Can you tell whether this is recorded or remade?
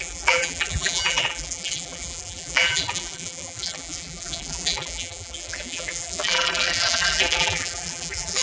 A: remade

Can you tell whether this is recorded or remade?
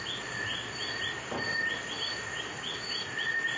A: recorded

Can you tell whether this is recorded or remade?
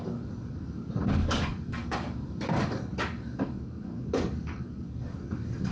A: remade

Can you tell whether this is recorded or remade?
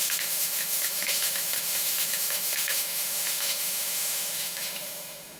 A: remade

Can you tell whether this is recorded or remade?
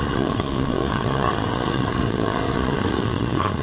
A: remade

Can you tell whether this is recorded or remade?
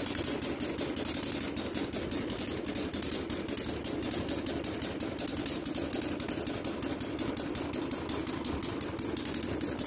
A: recorded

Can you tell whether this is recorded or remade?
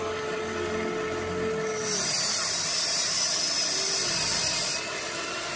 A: recorded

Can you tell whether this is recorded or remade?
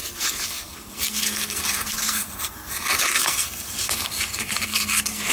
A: remade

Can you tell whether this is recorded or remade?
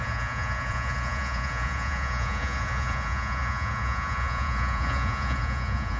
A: remade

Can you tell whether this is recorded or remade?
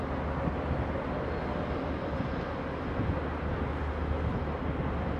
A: recorded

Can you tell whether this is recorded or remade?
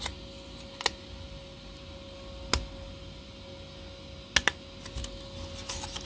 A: recorded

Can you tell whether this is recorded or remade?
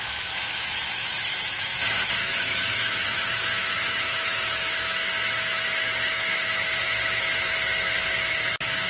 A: remade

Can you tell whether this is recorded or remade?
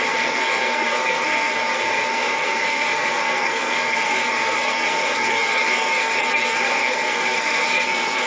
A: remade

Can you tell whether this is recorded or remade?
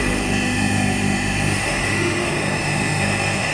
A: remade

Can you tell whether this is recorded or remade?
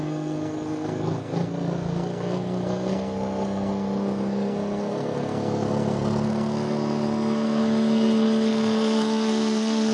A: remade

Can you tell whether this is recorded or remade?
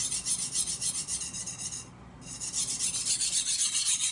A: recorded